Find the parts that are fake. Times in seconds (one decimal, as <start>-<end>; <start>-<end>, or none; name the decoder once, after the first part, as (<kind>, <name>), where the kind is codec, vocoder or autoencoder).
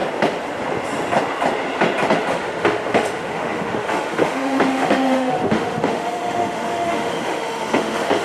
2.3-8.2 (autoencoder, DAC-VAE)